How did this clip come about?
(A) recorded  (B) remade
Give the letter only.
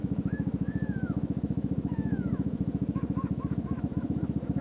B